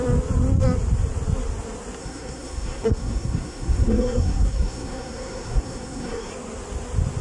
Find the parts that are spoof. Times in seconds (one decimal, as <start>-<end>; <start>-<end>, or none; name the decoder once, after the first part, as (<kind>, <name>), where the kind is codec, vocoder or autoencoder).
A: 2.0-6.3 (codec, SNAC)